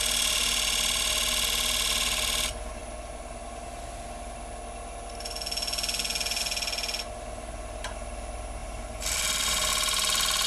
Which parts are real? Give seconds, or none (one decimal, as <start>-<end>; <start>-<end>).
0.0-8.6; 9.7-10.5